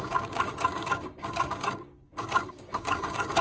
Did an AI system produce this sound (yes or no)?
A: yes